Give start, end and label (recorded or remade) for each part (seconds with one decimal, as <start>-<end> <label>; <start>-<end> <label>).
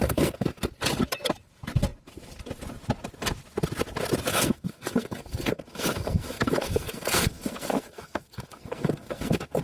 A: 0.0-0.7 remade; 0.7-4.3 recorded; 4.3-9.6 remade